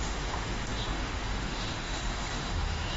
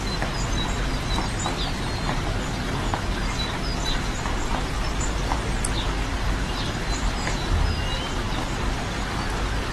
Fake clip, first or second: first